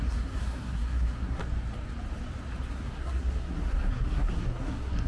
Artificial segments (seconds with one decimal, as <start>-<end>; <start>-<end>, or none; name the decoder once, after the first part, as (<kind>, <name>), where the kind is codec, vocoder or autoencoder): 0.0-1.4 (codec, SNAC); 2.7-5.1